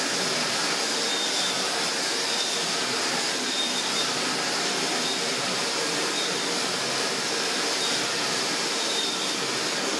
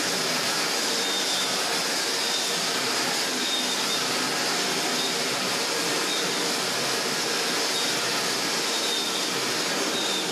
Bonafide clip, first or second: second